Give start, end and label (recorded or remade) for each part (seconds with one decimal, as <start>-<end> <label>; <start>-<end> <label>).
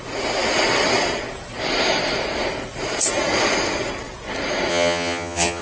0.0-4.7 recorded; 4.7-5.6 remade